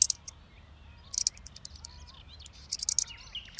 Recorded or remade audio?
recorded